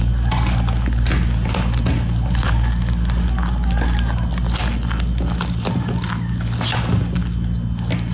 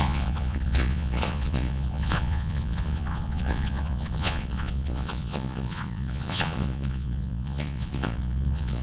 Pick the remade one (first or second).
second